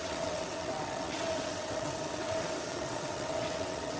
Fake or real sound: fake